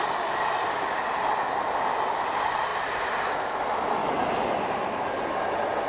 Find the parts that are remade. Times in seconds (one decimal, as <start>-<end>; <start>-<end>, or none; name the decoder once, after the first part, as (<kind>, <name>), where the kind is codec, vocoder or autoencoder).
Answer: none